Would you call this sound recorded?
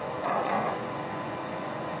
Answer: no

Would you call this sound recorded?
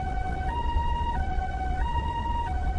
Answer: no